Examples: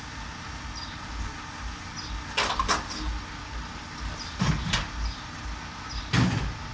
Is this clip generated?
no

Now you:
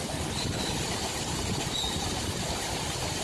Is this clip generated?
no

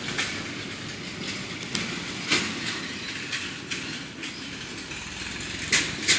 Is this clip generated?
no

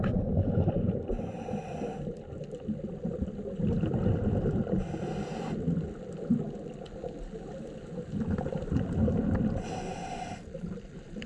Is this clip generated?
no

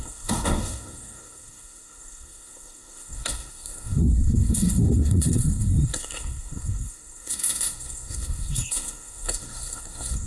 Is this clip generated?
yes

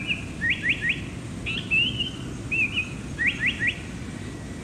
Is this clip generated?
no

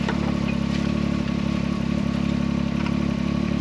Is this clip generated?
no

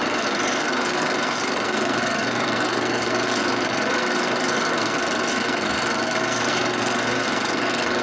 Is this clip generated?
yes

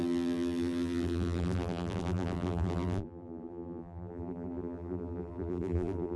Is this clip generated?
yes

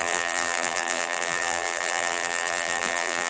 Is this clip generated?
yes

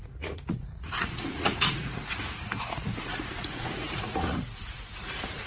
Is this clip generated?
yes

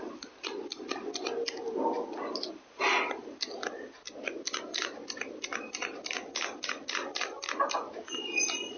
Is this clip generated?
no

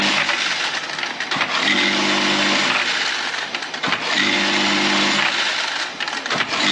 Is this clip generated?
no